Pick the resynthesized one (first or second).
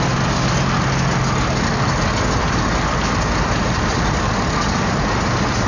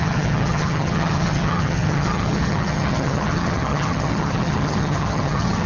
second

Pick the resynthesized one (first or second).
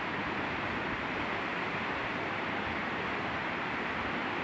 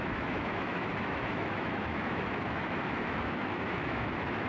second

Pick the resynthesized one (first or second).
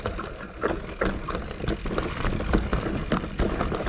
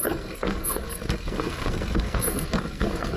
second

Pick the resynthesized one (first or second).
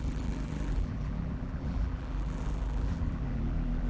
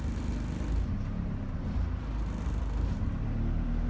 first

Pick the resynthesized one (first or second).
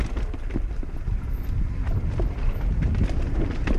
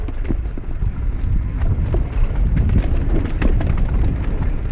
second